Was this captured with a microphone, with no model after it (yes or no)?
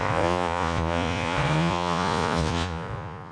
no